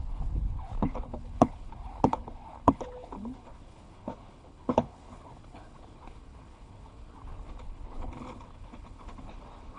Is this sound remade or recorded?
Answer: remade